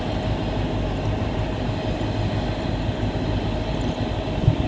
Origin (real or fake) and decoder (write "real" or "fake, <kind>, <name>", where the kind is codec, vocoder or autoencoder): real